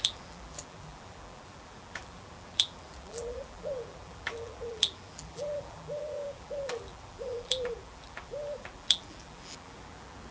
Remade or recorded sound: remade